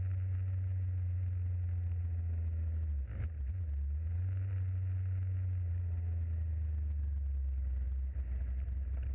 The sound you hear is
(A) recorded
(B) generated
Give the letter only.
A